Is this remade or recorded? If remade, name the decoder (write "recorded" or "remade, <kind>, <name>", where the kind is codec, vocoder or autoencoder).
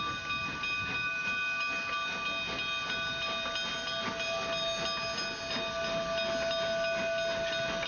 recorded